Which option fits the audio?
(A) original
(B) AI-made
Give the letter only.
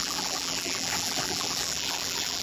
B